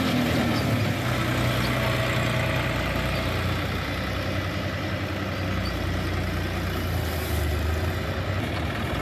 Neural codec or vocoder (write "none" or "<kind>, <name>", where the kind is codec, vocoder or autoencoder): none